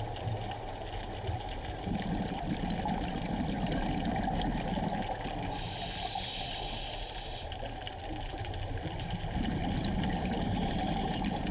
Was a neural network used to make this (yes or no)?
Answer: no